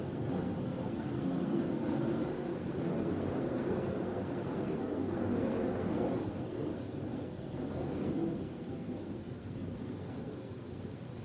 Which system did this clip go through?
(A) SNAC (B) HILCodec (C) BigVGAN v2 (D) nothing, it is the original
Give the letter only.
A